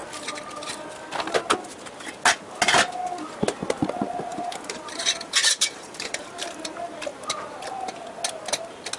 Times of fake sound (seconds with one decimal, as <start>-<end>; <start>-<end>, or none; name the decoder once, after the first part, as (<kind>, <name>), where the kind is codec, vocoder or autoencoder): 4.3-6.6 (vocoder, BigVGAN v2); 7.1-7.7